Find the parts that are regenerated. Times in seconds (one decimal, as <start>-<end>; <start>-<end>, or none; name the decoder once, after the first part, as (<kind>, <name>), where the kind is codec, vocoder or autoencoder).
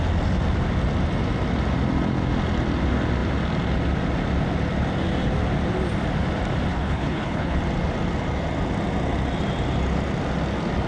6.7-7.6 (codec, HILCodec)